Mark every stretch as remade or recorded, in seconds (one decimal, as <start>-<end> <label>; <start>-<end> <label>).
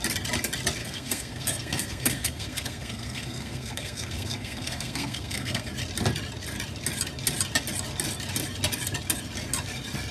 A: 0.0-0.8 recorded; 0.8-5.7 remade; 5.7-10.1 recorded